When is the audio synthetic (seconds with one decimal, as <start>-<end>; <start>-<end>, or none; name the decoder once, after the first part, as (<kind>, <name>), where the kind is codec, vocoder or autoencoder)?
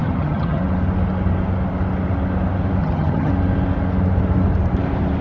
0.0-0.6 (vocoder, HiFi-GAN); 2.8-3.3